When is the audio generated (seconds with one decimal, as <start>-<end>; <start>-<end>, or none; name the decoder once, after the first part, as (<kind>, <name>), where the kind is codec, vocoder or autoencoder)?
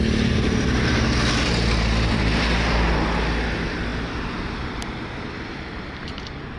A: none